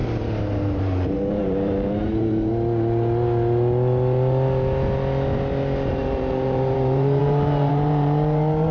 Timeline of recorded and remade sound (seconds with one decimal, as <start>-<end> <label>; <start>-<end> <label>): 0.0-2.5 remade; 2.5-5.9 recorded; 5.9-8.7 remade